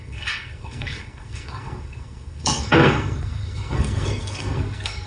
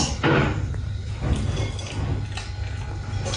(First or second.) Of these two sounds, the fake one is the first